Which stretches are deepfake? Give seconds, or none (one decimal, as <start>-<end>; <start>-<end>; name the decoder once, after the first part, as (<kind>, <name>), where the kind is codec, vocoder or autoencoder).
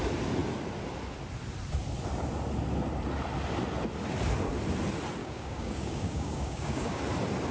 5.2-7.0 (codec, DAC)